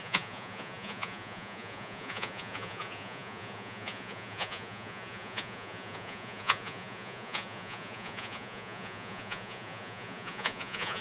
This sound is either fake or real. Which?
fake